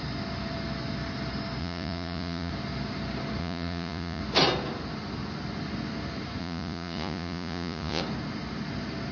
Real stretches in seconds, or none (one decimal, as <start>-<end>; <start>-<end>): 0.0-1.6; 2.5-3.4; 4.2-6.4; 8.0-9.1